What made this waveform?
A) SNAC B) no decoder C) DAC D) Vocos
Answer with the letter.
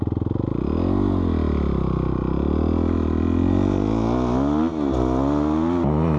B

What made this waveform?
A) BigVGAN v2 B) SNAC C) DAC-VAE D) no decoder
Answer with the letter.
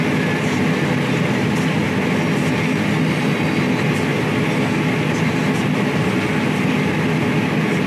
D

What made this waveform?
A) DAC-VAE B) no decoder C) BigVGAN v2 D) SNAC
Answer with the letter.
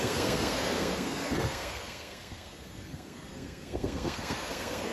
D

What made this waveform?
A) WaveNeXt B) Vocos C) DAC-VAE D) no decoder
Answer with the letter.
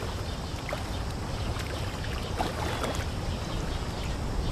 D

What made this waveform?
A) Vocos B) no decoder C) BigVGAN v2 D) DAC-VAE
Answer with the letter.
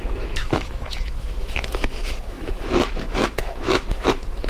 D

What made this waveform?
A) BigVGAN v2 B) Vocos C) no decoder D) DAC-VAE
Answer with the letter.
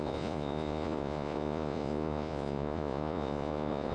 B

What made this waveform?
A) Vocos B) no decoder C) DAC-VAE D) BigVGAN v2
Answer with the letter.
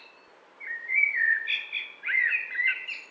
B